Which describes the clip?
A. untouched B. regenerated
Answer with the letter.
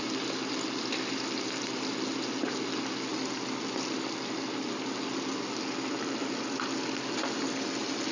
A